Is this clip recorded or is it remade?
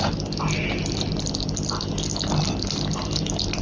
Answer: recorded